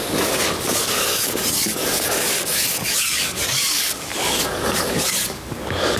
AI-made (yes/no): yes